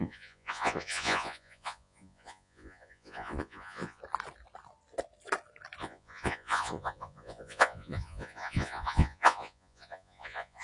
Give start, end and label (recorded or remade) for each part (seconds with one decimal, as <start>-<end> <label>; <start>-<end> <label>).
0.0-4.0 remade; 4.0-5.8 recorded; 5.8-10.6 remade